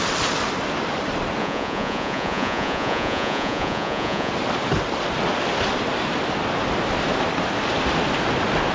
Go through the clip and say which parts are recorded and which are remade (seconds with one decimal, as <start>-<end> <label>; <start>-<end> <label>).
0.0-1.4 recorded; 1.4-4.3 remade; 4.3-8.7 recorded

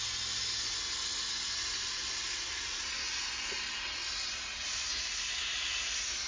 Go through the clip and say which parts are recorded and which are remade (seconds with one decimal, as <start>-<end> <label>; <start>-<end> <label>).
0.0-1.8 recorded; 1.8-3.0 remade; 3.0-4.9 recorded; 4.9-6.3 remade

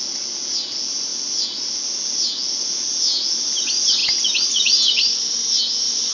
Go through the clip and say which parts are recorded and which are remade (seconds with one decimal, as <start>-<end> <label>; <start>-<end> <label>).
0.0-6.1 recorded